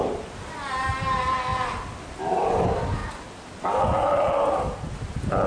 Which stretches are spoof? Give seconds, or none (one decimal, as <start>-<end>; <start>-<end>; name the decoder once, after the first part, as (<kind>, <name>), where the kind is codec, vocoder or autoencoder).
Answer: none